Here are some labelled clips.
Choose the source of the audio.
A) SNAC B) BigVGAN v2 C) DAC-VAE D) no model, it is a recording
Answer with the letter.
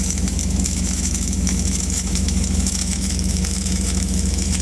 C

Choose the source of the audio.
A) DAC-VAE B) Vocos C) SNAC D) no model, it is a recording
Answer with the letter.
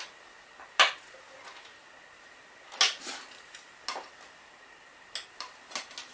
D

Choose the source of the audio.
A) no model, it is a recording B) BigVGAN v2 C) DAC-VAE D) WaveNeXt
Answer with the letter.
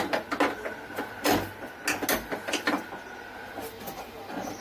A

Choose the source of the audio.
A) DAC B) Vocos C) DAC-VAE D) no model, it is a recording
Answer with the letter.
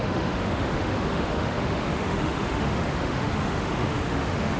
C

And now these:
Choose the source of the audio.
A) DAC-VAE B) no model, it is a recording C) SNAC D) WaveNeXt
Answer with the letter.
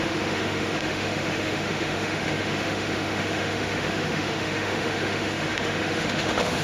A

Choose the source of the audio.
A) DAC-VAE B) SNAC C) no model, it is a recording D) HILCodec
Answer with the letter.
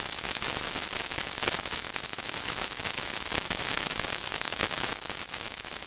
A